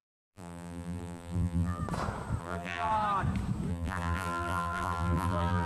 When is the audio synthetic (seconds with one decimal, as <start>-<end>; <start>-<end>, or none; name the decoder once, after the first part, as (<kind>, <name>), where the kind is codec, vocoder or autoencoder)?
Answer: 0.0-1.8 (vocoder, BigVGAN v2); 2.4-2.9; 3.7-5.7